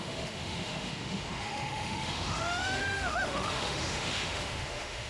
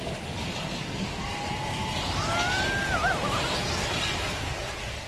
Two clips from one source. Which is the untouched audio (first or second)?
second